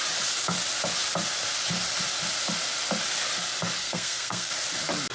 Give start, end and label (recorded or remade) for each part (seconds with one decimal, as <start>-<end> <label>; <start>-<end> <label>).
0.0-3.8 recorded; 3.8-4.5 remade; 4.5-5.1 recorded